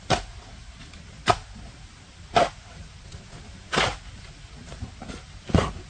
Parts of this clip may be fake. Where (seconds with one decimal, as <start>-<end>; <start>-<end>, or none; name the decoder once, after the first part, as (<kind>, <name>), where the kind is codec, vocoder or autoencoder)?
none